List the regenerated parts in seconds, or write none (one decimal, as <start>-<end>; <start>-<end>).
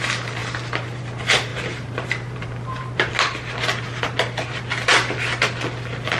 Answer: 1.5-3.1